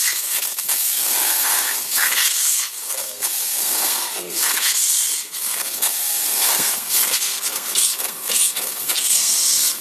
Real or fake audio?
fake